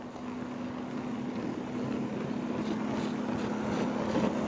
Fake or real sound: real